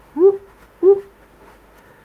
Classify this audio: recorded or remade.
remade